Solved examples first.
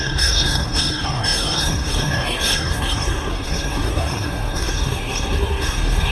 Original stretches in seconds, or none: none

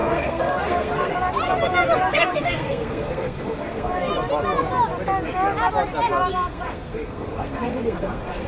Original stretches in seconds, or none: 1.1-2.1; 4.1-6.3

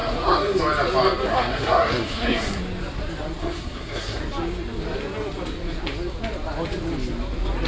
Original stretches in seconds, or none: 0.6-1.3; 2.6-3.4; 4.2-7.7

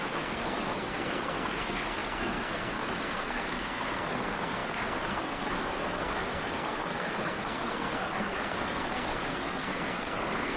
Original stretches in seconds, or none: none

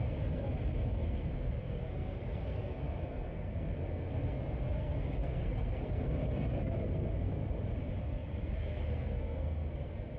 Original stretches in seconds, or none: 7.4-8.0

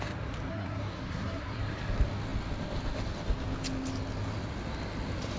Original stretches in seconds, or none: 0.0-0.5; 1.6-5.4